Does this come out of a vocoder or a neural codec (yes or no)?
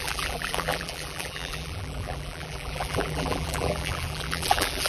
yes